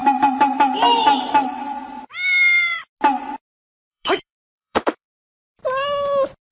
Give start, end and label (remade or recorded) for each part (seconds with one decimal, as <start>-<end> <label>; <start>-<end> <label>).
0.0-3.9 recorded; 3.9-5.6 remade; 5.6-6.5 recorded